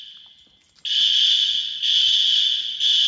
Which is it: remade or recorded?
recorded